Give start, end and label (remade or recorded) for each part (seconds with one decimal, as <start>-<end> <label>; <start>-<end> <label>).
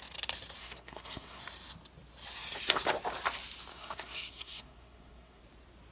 0.0-0.6 recorded; 0.6-1.4 remade; 1.4-3.7 recorded; 3.7-5.4 remade; 5.4-5.9 recorded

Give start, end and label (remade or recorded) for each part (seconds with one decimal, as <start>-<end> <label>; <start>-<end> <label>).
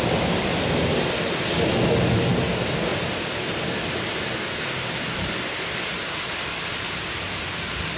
0.0-8.0 recorded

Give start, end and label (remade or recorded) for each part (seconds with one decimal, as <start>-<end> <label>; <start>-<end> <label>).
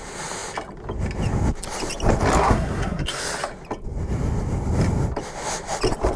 0.0-2.4 recorded; 2.4-3.2 remade; 3.2-6.2 recorded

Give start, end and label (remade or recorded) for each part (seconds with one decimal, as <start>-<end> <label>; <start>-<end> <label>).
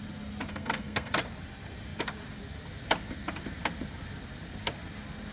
0.0-0.5 recorded; 0.5-1.1 remade; 1.1-5.3 recorded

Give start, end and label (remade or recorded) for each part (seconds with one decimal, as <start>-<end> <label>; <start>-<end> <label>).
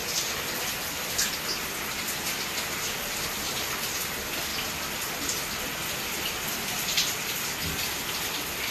0.0-8.7 recorded